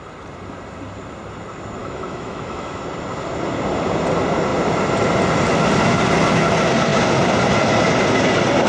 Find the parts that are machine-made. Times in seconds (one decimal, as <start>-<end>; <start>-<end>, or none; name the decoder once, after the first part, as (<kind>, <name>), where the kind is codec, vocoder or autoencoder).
1.8-2.8 (autoencoder, DAC-VAE)